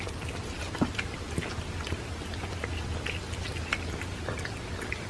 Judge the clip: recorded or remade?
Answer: recorded